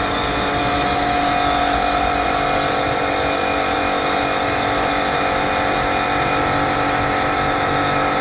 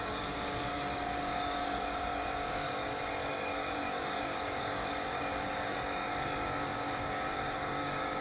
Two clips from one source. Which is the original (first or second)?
first